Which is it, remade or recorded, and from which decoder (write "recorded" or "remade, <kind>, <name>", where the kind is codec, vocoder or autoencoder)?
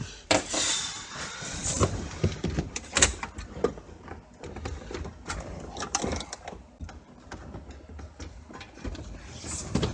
remade, vocoder, BigVGAN v2